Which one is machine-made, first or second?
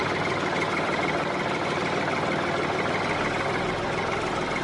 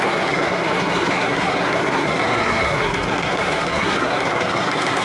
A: second